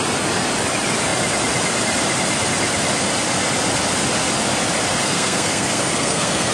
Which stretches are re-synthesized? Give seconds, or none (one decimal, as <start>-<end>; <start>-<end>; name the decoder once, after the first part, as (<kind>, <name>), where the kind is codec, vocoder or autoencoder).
5.0-6.5 (codec, SNAC)